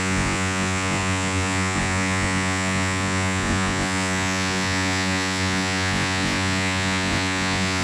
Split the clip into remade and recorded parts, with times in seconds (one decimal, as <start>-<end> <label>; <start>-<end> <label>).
0.0-7.8 remade